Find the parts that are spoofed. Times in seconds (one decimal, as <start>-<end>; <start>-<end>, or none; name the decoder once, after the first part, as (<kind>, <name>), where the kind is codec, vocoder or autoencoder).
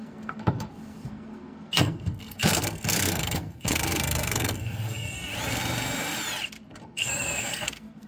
0.0-5.3 (codec, SNAC); 6.8-8.1